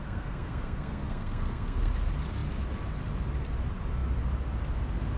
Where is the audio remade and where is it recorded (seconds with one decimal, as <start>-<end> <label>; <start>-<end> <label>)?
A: 0.0-1.9 remade; 1.9-5.2 recorded